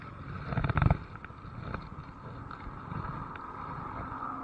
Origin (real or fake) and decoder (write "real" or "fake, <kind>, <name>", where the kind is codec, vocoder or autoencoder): real